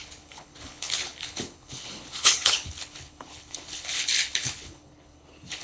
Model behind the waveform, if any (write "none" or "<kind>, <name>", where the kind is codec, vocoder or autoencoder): codec, HILCodec